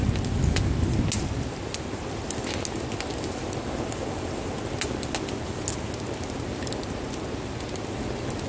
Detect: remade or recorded recorded